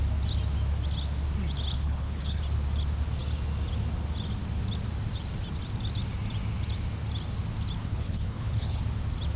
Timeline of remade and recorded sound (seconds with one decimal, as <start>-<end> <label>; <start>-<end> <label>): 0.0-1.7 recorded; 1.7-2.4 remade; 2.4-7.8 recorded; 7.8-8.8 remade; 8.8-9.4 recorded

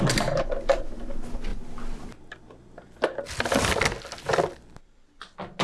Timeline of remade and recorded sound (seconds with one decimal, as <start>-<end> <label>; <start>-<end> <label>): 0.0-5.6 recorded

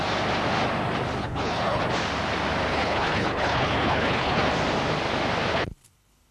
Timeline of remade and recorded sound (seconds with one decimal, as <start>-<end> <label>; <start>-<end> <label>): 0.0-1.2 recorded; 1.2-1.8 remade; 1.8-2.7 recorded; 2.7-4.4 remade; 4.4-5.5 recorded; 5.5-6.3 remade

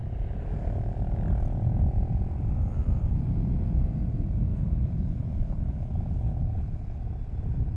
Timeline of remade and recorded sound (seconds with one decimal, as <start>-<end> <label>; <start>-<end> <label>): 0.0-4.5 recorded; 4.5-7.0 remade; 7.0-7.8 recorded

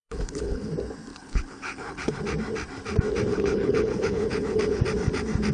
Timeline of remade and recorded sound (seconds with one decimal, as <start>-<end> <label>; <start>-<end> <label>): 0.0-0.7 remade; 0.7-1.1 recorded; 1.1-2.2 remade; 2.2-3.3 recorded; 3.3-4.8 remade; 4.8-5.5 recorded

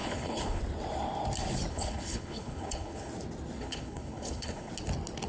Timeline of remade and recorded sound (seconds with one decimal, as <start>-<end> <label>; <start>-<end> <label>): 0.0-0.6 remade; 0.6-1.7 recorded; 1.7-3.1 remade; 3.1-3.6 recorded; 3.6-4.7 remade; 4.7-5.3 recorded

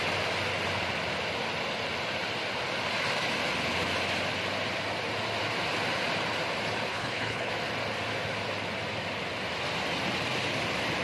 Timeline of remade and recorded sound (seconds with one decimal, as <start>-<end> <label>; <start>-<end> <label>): 0.0-6.9 recorded; 6.9-7.5 remade; 7.5-11.0 recorded